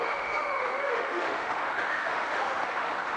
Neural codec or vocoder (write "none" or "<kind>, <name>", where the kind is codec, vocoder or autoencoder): autoencoder, DAC-VAE